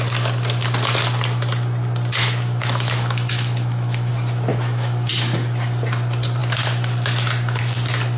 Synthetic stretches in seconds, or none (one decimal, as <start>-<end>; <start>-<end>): 2.2-4.1; 4.5-5.1